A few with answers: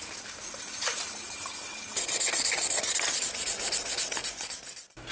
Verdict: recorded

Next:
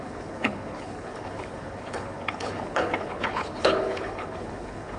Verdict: remade